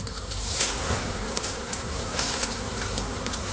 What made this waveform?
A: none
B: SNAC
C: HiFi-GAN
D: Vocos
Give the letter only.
B